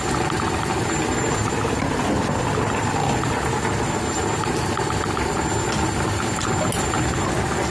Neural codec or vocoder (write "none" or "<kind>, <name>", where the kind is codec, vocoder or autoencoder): none